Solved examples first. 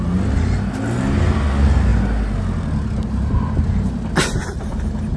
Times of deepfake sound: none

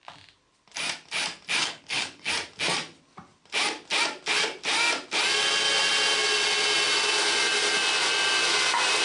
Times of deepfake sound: 1.6-2.3

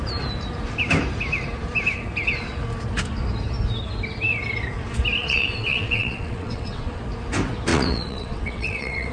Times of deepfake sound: 5.2-7.0; 7.7-9.1

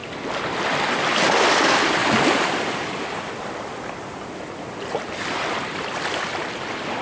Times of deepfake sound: 1.4-7.0

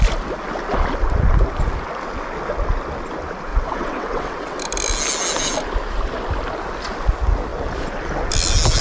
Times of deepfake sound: 3.5-4.6